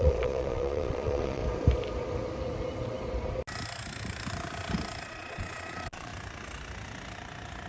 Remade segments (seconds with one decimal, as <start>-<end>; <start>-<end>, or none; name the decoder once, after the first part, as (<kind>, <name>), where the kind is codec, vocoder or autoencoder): 0.0-1.4 (vocoder, Vocos); 5.0-6.1